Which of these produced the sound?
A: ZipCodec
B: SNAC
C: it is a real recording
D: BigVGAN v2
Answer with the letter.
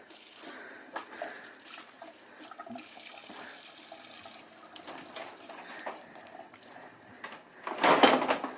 C